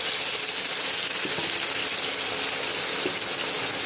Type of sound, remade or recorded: recorded